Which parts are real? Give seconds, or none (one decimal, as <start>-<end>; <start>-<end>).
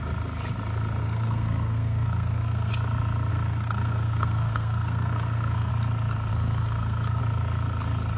0.0-1.0; 2.7-3.3; 5.7-6.3; 7.2-8.2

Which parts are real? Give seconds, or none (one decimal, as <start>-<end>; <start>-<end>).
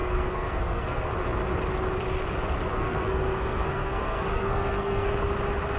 1.1-2.7; 5.1-5.8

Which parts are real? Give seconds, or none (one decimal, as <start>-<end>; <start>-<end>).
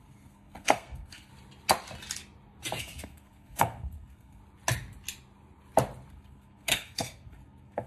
1.3-2.8; 4.4-6.1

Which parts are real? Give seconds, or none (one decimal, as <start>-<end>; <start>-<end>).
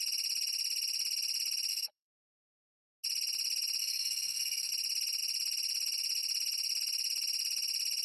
0.0-1.7; 2.2-3.8; 4.7-8.0